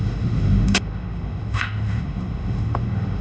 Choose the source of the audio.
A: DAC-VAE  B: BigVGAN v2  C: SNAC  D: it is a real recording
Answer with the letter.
A